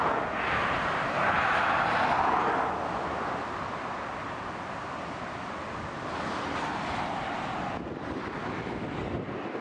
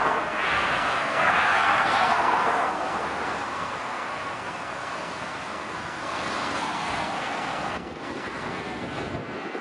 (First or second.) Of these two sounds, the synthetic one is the second